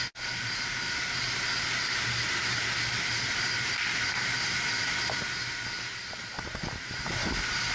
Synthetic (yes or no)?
no